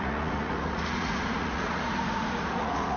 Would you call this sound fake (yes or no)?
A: yes